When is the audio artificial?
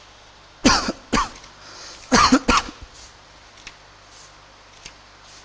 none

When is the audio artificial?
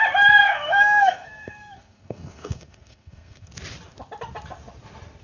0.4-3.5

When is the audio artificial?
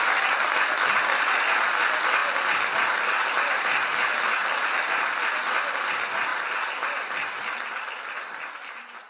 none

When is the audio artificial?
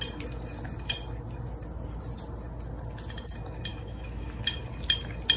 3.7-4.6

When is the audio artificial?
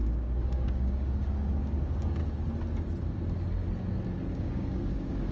0.0-2.2; 4.3-5.3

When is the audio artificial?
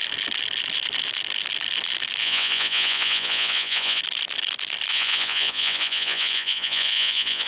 2.2-4.0; 4.9-7.5